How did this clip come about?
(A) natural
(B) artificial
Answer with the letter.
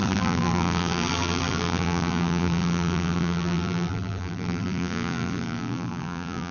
B